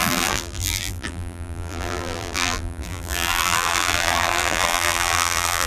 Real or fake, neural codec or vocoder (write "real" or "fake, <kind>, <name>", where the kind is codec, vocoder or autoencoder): fake, vocoder, BigVGAN v2